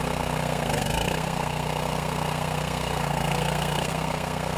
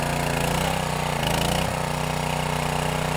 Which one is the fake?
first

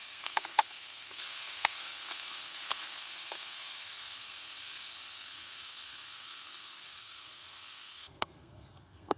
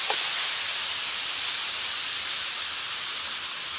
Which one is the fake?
first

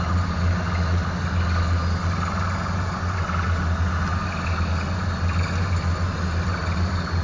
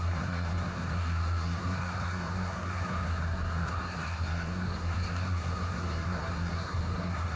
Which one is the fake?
second